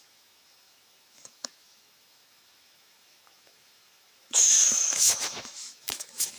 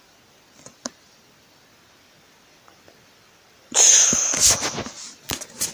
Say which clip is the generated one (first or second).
first